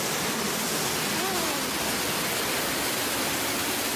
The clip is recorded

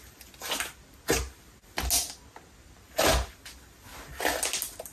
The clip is recorded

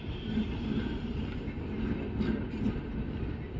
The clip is recorded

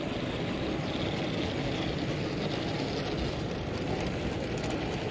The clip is recorded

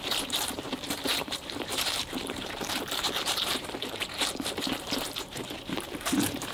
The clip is remade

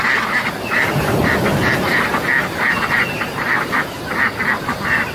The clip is recorded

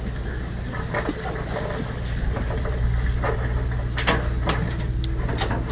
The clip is recorded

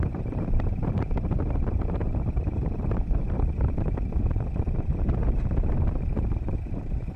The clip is remade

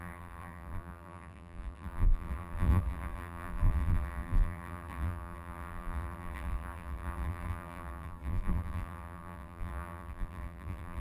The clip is remade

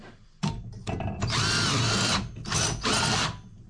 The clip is recorded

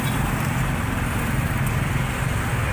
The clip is recorded